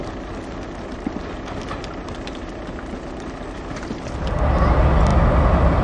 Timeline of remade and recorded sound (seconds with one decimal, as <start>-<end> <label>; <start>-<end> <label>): 0.0-5.8 recorded